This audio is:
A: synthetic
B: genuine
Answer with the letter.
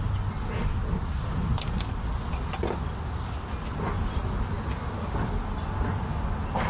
B